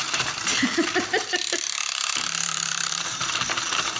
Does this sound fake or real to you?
fake